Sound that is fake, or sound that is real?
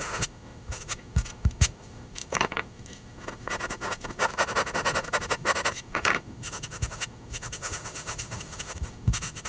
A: fake